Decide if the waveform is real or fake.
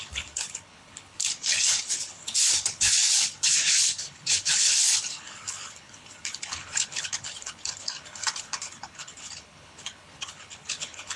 fake